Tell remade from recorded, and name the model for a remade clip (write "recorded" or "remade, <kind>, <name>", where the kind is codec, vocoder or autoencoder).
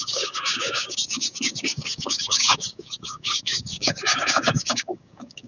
remade, codec, DAC